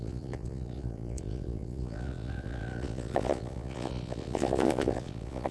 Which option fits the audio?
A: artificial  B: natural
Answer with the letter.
A